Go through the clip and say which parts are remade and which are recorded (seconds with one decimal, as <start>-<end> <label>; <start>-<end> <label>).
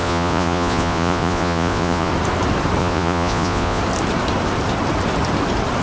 0.0-2.1 remade; 2.1-2.8 recorded; 2.8-3.8 remade; 3.8-5.8 recorded